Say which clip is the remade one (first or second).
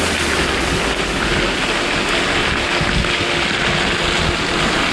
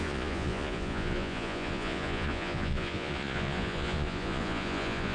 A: second